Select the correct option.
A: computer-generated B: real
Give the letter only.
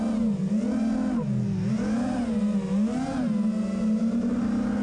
B